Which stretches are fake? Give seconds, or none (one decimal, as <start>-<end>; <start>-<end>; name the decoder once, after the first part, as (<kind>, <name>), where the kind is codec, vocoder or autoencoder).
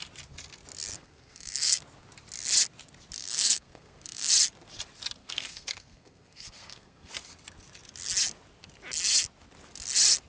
0.9-1.8 (codec, SNAC); 3.2-4.3; 5.2-7.1